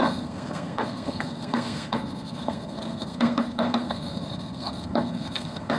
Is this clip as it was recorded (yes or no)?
no